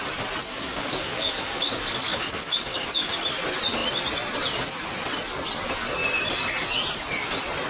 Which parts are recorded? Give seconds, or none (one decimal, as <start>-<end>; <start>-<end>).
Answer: 0.0-0.4; 3.1-7.7